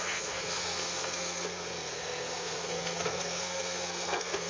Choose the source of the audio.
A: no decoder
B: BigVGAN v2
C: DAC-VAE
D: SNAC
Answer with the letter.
D